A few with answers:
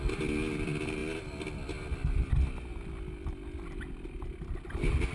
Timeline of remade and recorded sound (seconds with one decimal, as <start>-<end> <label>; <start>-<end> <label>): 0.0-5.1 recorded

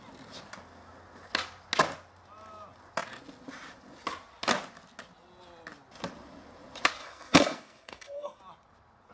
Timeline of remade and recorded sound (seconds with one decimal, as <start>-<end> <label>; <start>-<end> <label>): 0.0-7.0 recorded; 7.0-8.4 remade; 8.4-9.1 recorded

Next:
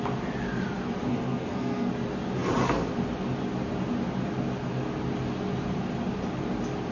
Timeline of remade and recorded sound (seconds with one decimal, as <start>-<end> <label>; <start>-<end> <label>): 0.0-1.1 recorded; 1.1-1.9 remade; 1.9-6.9 recorded

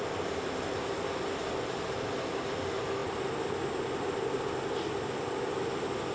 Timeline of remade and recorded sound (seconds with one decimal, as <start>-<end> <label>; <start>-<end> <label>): 0.0-6.1 recorded

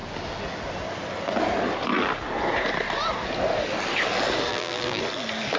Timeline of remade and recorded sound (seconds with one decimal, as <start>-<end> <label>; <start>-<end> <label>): 0.0-4.5 recorded; 4.5-5.0 remade; 5.0-5.6 recorded

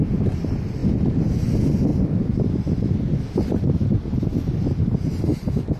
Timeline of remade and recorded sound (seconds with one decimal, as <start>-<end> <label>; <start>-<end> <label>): 0.0-5.8 recorded

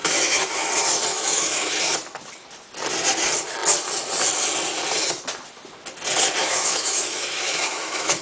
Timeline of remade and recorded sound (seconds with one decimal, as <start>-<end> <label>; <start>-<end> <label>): 0.0-0.7 remade; 0.7-1.1 recorded; 1.1-1.7 remade; 1.7-6.4 recorded; 6.4-8.2 remade